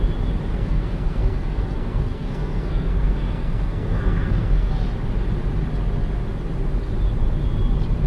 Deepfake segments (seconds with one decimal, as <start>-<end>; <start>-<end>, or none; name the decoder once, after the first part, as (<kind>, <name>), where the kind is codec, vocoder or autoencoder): 0.5-4.7 (codec, SNAC)